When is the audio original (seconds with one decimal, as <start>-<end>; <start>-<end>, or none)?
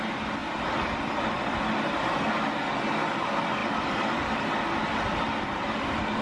0.0-0.4; 1.6-3.6; 4.5-6.2